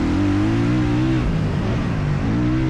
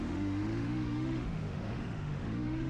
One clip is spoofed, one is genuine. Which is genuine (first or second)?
first